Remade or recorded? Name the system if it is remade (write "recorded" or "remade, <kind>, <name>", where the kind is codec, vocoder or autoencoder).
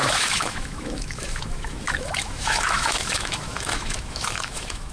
remade, autoencoder, DAC-VAE